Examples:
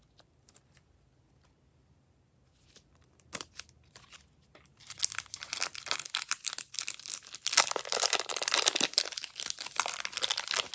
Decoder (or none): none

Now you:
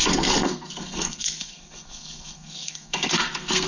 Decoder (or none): codec, SNAC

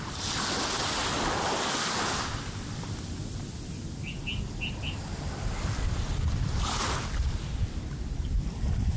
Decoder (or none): none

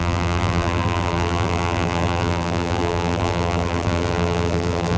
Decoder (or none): vocoder, BigVGAN v2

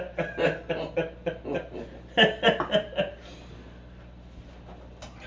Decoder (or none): none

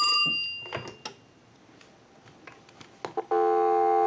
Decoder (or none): none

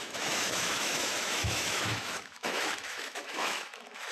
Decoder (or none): autoencoder, DAC-VAE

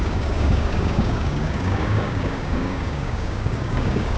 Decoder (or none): codec, DAC